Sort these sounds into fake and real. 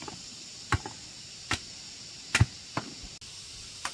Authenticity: real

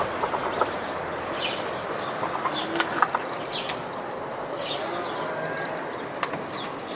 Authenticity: real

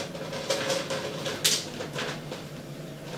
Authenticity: real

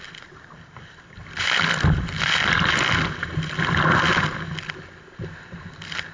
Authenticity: real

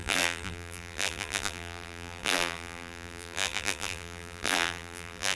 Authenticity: fake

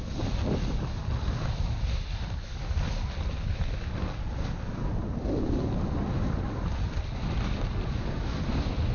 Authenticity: real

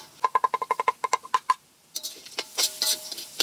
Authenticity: real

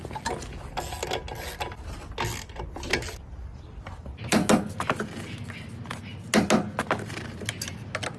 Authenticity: real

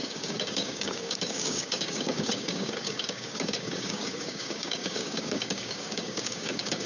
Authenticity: fake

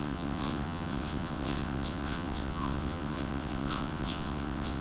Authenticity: fake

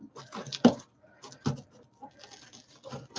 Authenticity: real